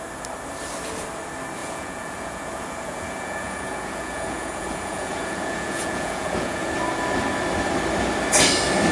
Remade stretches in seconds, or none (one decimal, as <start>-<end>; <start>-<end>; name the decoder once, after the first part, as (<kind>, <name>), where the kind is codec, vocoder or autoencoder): 1.6-6.7 (vocoder, Vocos)